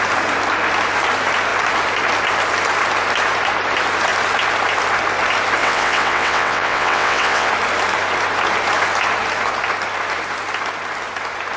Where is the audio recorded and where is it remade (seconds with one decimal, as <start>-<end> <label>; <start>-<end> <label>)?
0.0-5.6 recorded; 5.6-7.5 remade; 7.5-11.6 recorded